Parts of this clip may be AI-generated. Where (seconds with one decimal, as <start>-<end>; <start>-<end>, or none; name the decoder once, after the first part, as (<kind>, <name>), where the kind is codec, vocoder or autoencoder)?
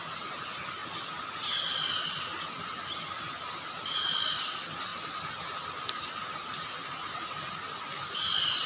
none